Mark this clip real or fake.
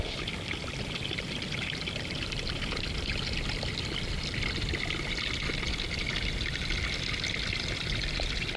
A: real